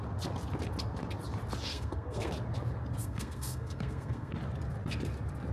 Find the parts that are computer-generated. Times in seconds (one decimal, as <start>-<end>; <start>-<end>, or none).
1.7-2.3; 3.0-4.3